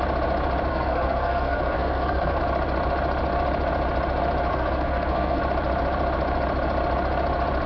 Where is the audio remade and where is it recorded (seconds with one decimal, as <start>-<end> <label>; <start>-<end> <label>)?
0.0-0.7 recorded; 0.7-2.4 remade; 2.4-4.5 recorded; 4.5-5.4 remade; 5.4-7.7 recorded